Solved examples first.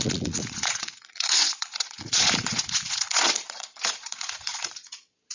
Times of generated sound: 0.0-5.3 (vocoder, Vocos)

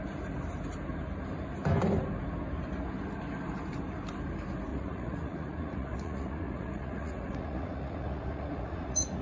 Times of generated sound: 4.7-9.2 (vocoder, Vocos)

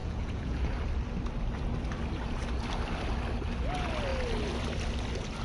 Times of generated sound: 0.0-0.7 (vocoder, Vocos)